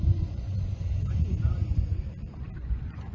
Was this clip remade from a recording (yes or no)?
yes